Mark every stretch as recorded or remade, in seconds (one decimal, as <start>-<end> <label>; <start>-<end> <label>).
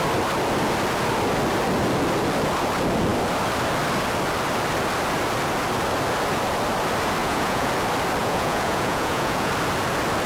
0.0-7.2 recorded; 7.2-7.7 remade; 7.7-8.2 recorded; 8.2-9.5 remade; 9.5-10.3 recorded